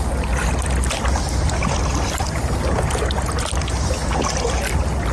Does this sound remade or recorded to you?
recorded